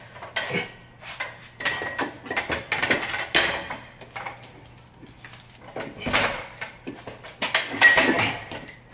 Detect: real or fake real